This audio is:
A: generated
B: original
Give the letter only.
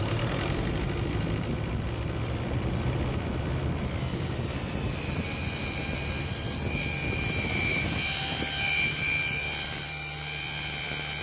A